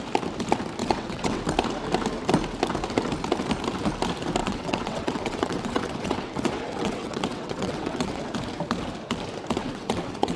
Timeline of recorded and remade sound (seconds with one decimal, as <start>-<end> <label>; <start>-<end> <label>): 0.0-0.8 recorded; 0.8-1.4 remade; 1.4-4.4 recorded; 4.4-8.2 remade; 8.2-9.6 recorded; 9.6-10.4 remade